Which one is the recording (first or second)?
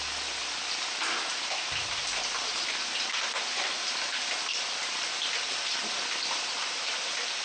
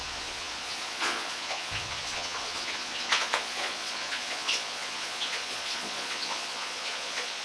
first